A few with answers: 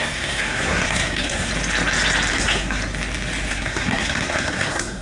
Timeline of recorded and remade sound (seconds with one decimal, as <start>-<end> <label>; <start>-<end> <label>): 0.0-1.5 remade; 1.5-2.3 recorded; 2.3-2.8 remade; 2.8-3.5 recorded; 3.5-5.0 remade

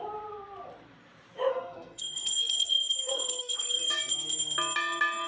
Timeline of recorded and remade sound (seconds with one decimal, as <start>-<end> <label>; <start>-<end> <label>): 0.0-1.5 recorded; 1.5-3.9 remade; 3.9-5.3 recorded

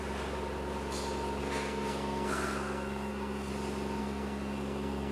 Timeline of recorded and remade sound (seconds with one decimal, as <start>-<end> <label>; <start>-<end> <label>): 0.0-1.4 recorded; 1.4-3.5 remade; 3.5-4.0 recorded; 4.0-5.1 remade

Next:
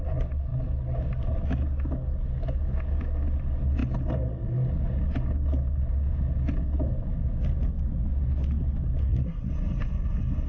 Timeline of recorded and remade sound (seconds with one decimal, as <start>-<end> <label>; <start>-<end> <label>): 0.0-9.0 recorded; 9.0-9.5 remade; 9.5-10.5 recorded